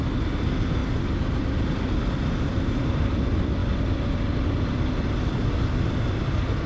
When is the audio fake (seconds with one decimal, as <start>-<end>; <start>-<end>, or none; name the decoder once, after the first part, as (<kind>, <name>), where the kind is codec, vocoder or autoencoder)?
none

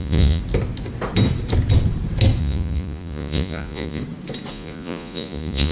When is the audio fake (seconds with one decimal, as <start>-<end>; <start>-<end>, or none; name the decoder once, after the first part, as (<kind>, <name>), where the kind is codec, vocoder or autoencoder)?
0.0-0.4 (vocoder, Vocos); 2.4-4.0; 4.5-5.7

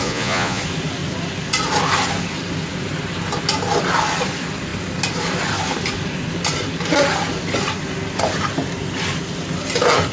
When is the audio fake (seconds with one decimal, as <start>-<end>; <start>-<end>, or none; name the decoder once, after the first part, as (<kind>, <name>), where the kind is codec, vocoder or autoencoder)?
0.0-0.6 (vocoder, Vocos)

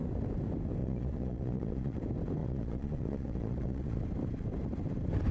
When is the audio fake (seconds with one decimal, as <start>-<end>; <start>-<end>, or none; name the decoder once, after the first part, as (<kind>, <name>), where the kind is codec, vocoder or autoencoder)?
0.8-2.0 (vocoder, Vocos); 2.4-4.0